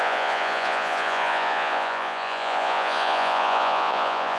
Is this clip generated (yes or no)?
yes